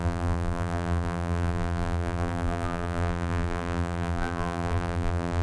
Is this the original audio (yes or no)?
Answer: no